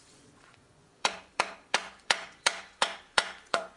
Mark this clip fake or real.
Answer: fake